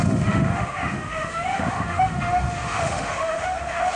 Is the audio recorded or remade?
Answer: remade